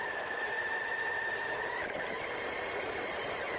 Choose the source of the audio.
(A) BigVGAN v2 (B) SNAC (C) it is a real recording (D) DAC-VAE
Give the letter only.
C